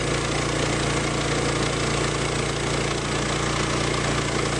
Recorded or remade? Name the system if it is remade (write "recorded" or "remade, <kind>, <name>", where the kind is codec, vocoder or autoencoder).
recorded